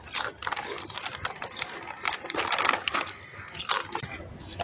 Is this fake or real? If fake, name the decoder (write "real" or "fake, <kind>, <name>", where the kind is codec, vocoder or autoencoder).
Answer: real